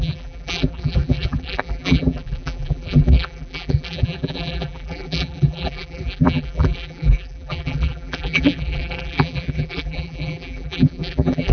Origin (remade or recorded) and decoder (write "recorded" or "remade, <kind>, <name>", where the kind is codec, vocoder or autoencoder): remade, vocoder, BigVGAN v2